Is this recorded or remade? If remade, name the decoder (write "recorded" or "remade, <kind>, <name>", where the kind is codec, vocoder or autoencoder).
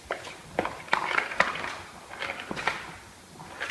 recorded